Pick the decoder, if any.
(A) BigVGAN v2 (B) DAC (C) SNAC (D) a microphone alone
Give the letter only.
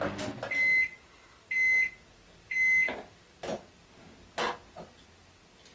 D